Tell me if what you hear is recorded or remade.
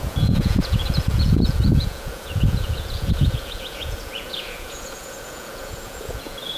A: remade